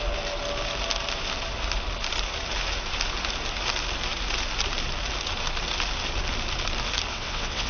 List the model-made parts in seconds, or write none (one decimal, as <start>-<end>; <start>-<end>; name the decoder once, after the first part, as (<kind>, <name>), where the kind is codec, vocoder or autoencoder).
7.1-7.7 (vocoder, WaveNeXt)